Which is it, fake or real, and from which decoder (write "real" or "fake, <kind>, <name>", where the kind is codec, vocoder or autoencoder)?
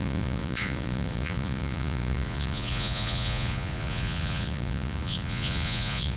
fake, vocoder, Vocos